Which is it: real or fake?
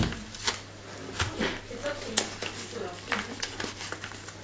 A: real